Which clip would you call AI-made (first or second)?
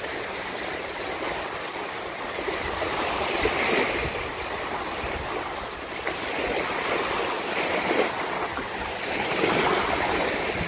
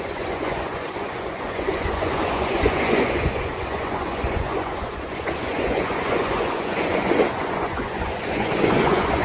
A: second